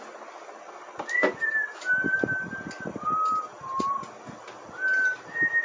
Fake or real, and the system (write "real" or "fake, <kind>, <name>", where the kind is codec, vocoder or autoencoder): real